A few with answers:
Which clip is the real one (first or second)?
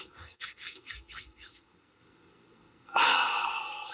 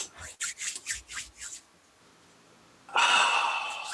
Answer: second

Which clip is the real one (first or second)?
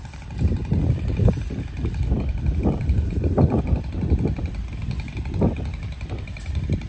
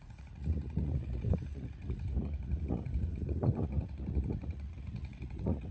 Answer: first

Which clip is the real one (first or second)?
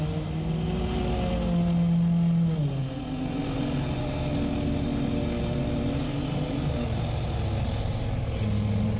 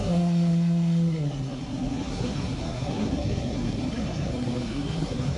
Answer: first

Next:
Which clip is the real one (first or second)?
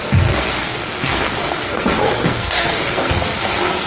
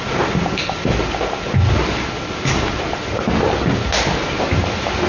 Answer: second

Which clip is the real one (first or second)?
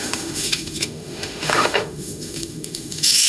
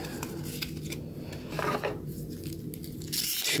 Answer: second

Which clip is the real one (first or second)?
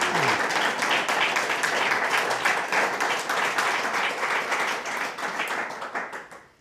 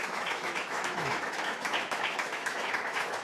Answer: first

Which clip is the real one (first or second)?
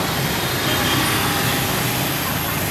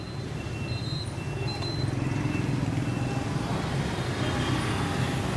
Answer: second